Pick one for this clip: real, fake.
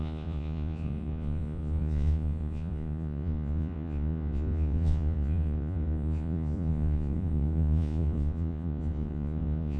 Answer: fake